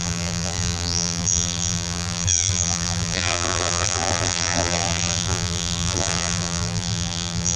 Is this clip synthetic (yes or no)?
yes